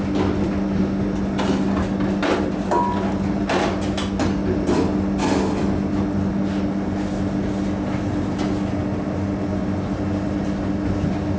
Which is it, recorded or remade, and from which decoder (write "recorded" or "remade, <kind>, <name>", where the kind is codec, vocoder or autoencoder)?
recorded